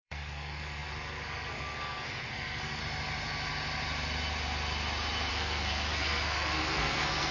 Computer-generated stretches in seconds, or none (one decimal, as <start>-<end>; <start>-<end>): 0.0-2.8; 5.3-7.3

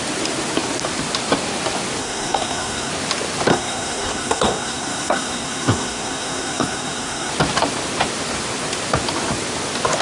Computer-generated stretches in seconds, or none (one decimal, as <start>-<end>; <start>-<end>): 2.0-2.9; 3.5-7.3

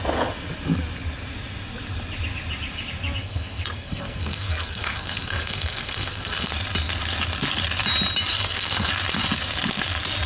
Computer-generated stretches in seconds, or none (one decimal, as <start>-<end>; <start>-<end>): 3.2-6.5; 8.3-8.9

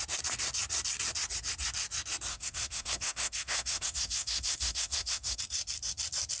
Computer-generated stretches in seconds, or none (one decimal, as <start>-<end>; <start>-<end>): 2.3-5.4

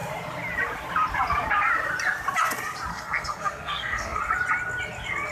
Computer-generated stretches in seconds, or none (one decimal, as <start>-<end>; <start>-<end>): 2.9-4.2

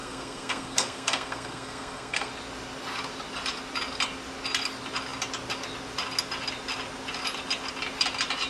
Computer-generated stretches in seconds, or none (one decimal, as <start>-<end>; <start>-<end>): 0.0-2.3